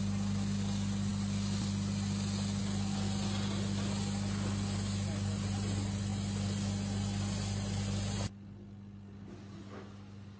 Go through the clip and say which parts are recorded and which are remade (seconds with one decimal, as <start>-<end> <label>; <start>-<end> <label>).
0.0-10.4 recorded